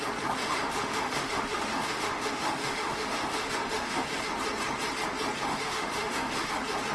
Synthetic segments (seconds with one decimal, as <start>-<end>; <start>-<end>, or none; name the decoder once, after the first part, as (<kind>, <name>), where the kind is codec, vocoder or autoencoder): 0.4-4.2 (autoencoder, DAC-VAE); 5.5-6.5